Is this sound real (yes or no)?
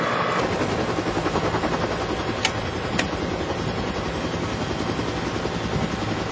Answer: yes